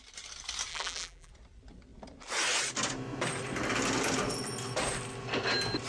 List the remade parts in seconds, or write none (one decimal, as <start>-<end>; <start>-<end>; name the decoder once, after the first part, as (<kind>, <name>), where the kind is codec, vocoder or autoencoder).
0.7-1.3 (vocoder, BigVGAN v2)